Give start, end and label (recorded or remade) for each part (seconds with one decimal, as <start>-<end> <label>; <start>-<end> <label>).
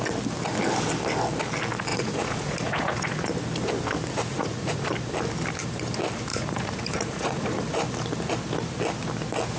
0.0-1.9 recorded; 1.9-3.3 remade; 3.3-4.3 recorded; 4.3-4.9 remade; 4.9-6.3 recorded; 6.3-7.6 remade; 7.6-9.6 recorded